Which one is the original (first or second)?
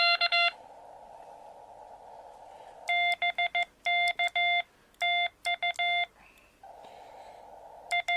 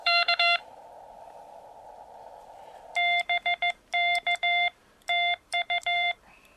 first